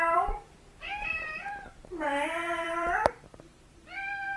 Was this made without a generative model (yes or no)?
no